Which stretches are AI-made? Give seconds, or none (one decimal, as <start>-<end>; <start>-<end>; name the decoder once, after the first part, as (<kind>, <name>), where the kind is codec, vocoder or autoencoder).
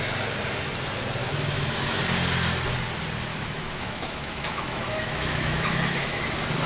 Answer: 1.2-2.0 (autoencoder, DAC-VAE); 3.3-6.2